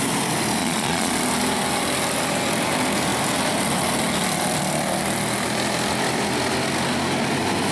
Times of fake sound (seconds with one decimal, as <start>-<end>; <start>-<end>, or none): 0.6-1.1